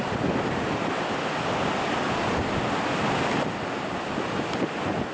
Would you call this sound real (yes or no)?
yes